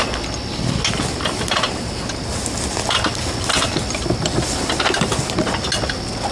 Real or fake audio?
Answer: real